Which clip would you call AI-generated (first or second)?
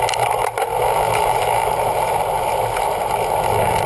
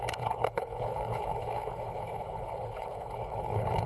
second